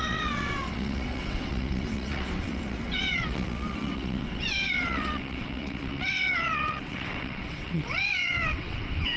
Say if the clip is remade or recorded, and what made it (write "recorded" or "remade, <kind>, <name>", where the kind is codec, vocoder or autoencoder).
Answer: remade, vocoder, WaveNeXt